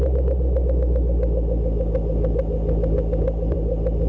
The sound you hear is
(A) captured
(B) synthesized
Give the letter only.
A